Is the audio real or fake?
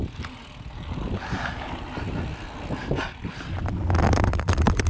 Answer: real